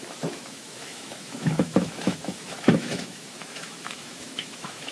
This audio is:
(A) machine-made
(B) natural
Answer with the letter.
A